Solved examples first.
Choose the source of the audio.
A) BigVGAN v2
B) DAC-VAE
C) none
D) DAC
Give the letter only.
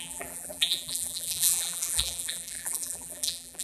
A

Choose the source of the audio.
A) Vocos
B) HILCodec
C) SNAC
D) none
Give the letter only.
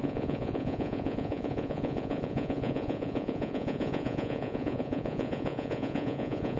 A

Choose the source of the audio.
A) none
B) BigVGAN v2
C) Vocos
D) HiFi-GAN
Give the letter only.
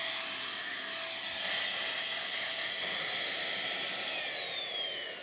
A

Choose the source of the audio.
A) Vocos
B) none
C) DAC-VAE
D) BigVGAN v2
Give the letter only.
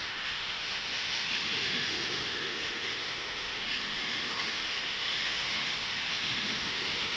C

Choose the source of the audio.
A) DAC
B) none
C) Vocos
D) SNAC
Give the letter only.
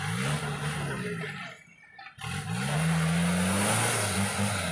B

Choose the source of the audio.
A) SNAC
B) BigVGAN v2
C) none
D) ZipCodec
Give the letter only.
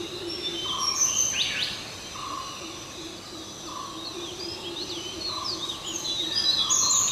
C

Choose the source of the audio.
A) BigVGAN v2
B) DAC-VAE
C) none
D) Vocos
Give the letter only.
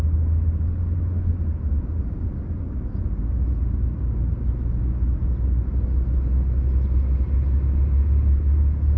C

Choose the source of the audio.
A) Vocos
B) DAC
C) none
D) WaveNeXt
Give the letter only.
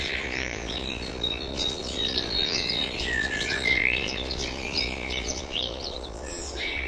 A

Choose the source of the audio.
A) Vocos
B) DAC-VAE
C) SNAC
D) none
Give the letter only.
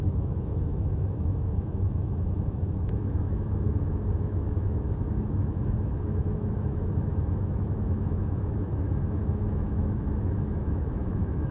B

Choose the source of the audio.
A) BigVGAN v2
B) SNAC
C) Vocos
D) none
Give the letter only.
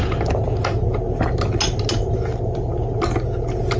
D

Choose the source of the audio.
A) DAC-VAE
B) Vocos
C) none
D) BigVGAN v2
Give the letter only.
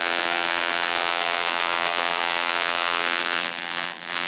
D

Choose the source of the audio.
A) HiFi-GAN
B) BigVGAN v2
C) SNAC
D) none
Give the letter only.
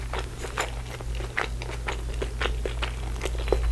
D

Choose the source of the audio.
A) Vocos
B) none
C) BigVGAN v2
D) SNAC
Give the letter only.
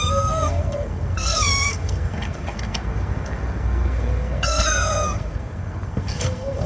D